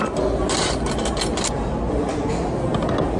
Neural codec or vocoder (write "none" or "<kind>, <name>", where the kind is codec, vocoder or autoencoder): none